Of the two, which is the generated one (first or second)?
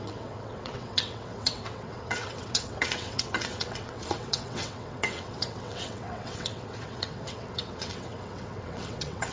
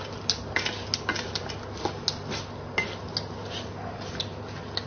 first